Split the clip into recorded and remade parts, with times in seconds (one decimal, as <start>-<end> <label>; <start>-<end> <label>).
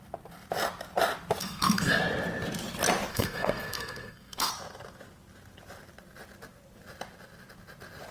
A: 0.0-1.4 recorded; 1.4-2.0 remade; 2.0-3.1 recorded; 3.1-4.5 remade; 4.5-8.1 recorded